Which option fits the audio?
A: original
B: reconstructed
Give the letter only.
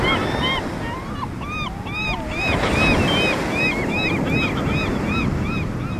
A